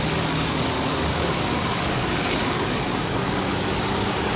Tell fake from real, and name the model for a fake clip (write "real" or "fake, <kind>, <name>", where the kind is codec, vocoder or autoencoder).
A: fake, codec, DAC